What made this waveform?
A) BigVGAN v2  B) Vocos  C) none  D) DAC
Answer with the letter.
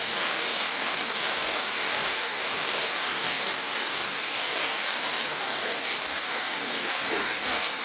D